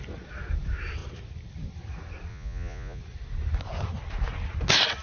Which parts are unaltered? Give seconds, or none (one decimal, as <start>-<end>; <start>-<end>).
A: 0.0-2.3; 3.0-5.0